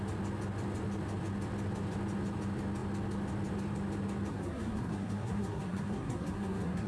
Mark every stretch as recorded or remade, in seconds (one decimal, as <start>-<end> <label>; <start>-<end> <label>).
0.0-4.3 recorded; 4.3-6.9 remade